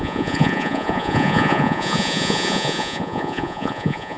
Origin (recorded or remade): remade